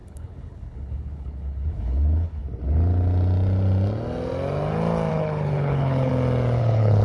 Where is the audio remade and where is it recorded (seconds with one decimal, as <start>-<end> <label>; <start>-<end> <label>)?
0.0-2.4 remade; 2.4-5.1 recorded; 5.1-6.1 remade; 6.1-6.6 recorded; 6.6-7.0 remade